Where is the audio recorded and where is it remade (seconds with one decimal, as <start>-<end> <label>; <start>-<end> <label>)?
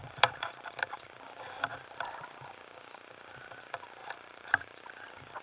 0.0-1.0 remade; 1.0-4.0 recorded; 4.0-4.8 remade; 4.8-5.4 recorded